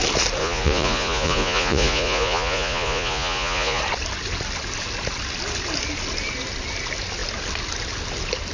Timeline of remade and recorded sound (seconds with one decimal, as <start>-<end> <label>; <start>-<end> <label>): 0.0-0.4 recorded; 0.4-3.8 remade; 3.8-8.5 recorded